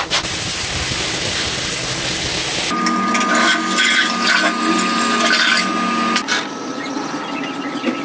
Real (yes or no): yes